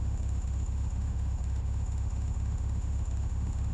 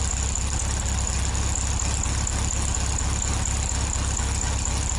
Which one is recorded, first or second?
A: second